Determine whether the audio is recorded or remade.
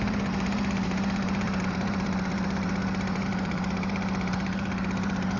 remade